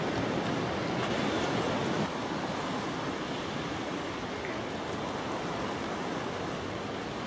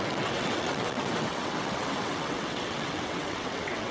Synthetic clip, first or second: second